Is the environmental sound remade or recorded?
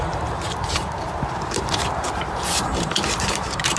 remade